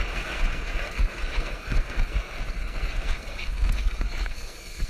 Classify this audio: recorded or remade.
remade